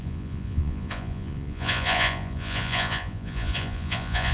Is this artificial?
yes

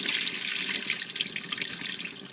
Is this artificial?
no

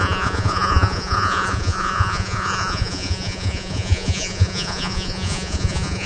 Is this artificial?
yes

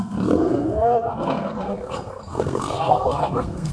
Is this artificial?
yes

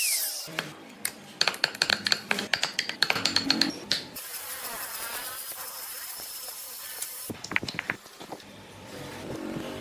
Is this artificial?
yes